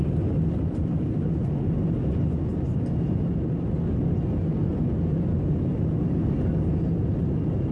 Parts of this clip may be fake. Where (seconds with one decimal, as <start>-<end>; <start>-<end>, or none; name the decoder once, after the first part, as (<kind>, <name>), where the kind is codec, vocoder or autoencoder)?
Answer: none